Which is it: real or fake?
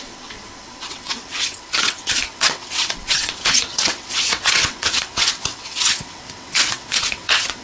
fake